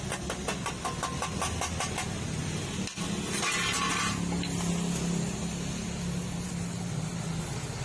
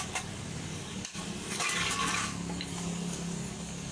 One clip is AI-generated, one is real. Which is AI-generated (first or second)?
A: second